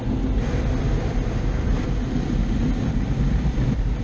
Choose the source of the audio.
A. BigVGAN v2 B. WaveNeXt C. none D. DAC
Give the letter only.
C